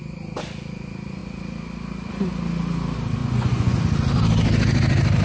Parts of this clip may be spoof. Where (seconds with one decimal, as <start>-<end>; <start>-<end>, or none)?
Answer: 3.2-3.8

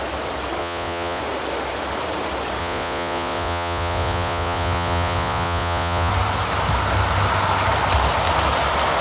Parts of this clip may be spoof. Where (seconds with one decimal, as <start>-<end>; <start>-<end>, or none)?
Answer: 0.6-1.2; 2.6-6.1

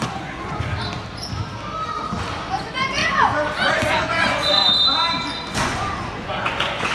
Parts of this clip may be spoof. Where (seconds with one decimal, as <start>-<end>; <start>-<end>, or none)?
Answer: 0.0-0.7; 2.4-3.0; 3.9-4.6; 5.6-6.9

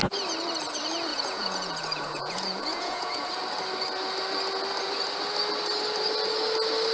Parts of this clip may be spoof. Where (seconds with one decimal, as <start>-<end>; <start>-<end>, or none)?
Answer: 1.1-3.3

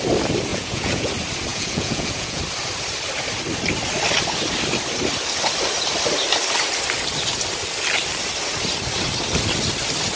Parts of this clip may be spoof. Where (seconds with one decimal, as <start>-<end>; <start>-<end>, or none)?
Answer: 0.5-1.1; 1.5-2.4

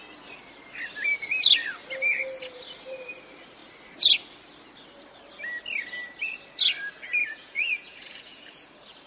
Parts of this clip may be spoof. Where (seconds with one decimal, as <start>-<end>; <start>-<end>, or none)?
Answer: 7.2-8.7